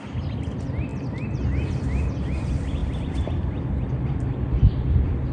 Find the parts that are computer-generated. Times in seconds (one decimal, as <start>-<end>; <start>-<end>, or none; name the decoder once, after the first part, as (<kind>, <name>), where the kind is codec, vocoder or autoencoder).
none